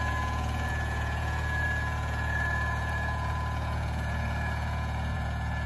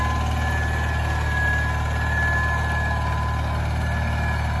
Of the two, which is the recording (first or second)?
second